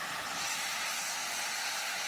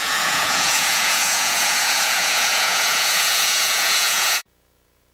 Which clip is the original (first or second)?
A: first